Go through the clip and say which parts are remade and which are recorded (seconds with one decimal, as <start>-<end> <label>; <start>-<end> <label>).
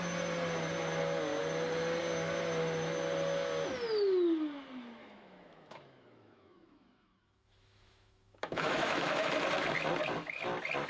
0.0-5.0 recorded; 5.0-9.3 remade; 9.3-10.9 recorded